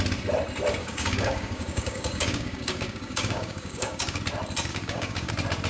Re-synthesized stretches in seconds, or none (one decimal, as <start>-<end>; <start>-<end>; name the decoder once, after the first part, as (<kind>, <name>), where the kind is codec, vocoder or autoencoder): 0.8-4.2 (codec, DAC); 4.7-5.3